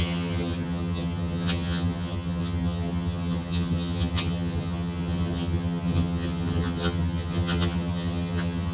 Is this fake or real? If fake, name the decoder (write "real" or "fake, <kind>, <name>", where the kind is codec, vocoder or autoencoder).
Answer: fake, vocoder, HiFi-GAN